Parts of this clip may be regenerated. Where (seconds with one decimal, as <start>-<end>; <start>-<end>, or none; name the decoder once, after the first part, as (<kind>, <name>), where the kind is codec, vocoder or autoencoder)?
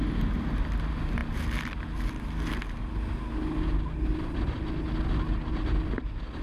none